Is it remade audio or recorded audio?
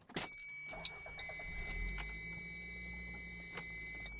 recorded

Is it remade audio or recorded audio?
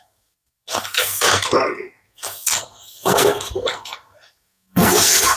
remade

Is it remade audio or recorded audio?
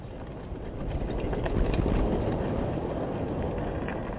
recorded